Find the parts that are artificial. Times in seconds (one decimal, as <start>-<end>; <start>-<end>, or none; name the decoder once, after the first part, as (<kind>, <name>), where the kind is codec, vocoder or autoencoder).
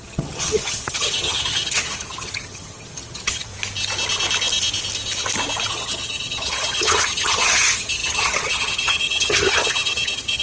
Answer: 0.0-3.5 (vocoder, HiFi-GAN); 5.7-10.4